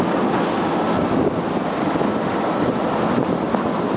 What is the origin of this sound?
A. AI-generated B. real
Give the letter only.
B